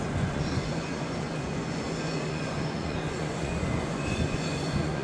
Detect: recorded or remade remade